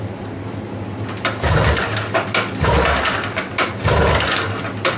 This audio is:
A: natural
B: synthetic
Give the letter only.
A